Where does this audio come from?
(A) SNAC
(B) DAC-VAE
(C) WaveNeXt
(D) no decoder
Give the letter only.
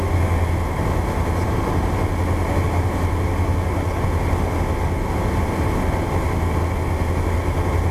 D